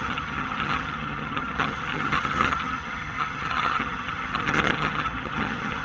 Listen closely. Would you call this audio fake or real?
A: fake